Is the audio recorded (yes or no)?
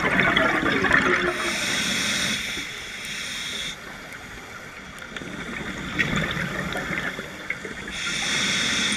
yes